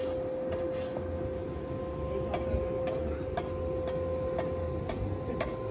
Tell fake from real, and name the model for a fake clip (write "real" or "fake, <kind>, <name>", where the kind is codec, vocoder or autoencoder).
real